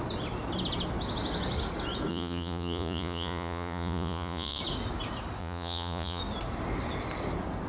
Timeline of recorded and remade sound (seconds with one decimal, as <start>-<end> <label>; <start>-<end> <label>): 0.0-2.1 recorded; 2.1-4.6 remade; 4.6-5.4 recorded; 5.4-6.2 remade; 6.2-7.7 recorded